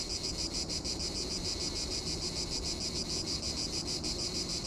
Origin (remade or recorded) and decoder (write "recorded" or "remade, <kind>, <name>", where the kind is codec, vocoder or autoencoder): recorded